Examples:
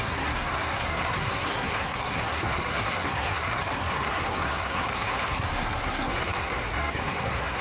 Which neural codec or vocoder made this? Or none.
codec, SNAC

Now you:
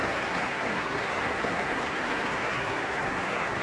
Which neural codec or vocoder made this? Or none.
codec, SNAC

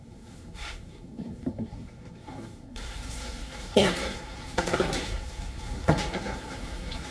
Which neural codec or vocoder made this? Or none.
codec, SNAC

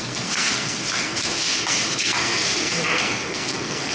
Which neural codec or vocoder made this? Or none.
codec, SNAC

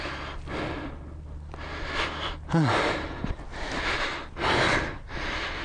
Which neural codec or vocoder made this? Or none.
none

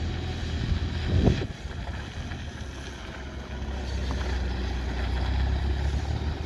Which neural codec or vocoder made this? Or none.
none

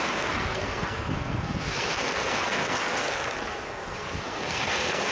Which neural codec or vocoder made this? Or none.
codec, SNAC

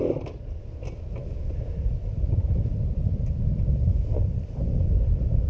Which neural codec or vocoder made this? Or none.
none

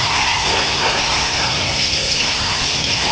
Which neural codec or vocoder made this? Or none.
codec, SNAC